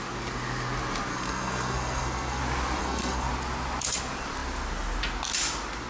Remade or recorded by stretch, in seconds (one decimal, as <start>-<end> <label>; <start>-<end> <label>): 0.0-1.1 recorded; 1.1-2.4 remade; 2.4-2.8 recorded; 2.8-3.3 remade; 3.3-5.9 recorded